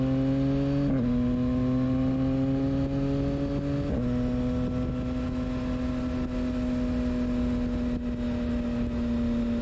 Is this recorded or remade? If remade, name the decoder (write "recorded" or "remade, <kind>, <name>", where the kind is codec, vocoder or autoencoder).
recorded